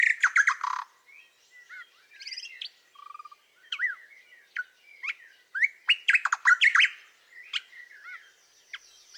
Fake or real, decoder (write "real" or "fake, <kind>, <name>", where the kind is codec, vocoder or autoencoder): real